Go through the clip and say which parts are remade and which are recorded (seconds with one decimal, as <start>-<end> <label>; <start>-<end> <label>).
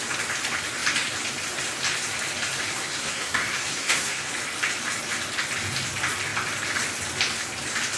0.0-2.7 recorded; 2.7-4.3 remade; 4.3-8.0 recorded